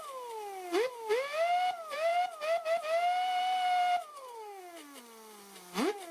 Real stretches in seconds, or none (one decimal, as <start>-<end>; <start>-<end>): 0.0-4.1; 4.6-6.1